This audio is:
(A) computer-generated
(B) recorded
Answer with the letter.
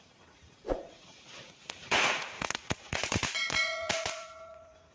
A